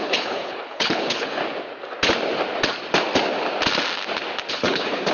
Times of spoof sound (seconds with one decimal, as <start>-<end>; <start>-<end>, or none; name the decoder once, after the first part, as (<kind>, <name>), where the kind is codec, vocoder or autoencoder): 0.0-1.4 (codec, HILCodec); 4.5-5.1